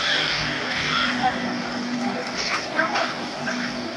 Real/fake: fake